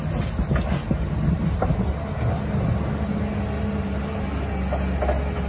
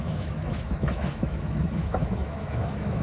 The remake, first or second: second